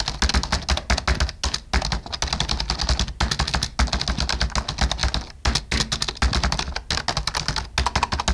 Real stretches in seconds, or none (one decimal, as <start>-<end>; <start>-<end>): 0.0-8.3